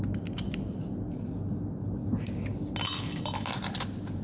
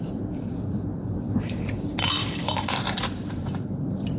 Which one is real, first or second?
first